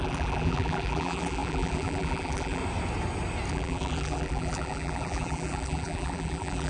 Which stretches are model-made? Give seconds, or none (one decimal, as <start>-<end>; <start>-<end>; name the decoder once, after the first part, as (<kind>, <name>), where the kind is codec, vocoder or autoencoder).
0.0-2.6 (vocoder, BigVGAN v2); 3.5-6.7